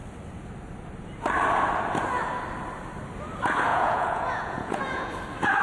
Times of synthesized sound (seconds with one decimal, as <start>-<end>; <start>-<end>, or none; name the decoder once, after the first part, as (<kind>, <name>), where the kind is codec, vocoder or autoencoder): 3.7-5.1 (vocoder, Vocos)